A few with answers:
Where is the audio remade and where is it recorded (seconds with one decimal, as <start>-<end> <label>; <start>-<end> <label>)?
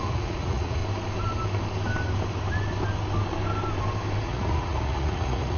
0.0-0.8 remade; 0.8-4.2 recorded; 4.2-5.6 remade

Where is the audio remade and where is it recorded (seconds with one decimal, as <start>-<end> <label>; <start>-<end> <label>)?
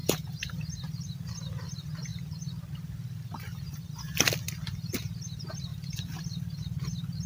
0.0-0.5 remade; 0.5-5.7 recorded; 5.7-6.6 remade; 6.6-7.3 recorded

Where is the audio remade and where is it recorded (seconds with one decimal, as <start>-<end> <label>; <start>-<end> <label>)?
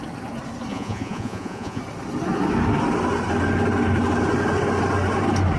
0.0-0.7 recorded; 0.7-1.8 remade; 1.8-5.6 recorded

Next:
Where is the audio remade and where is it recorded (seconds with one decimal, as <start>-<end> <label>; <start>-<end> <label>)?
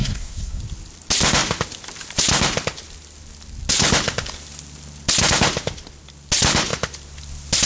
0.0-0.6 remade; 0.6-7.7 recorded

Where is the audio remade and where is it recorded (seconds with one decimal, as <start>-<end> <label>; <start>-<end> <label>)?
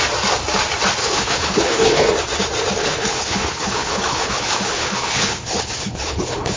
0.0-1.0 recorded; 1.0-2.1 remade; 2.1-2.8 recorded; 2.8-6.6 remade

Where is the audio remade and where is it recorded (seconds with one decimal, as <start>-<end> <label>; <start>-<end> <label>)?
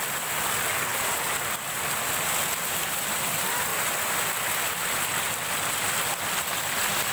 0.0-7.1 recorded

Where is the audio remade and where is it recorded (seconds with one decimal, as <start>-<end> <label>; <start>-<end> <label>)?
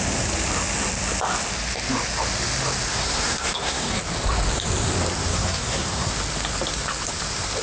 0.0-2.9 recorded; 2.9-4.0 remade; 4.0-5.3 recorded; 5.3-6.1 remade; 6.1-7.6 recorded